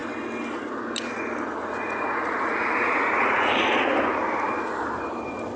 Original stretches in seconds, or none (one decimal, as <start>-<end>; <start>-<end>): 0.0-1.6; 3.5-5.6